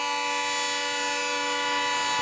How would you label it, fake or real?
real